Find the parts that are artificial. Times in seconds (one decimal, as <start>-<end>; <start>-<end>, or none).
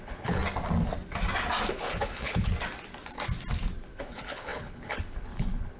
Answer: 0.0-0.4; 1.7-2.5; 3.8-5.8